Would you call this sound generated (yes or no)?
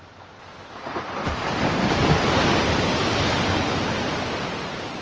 no